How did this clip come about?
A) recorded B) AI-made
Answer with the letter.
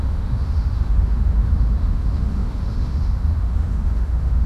B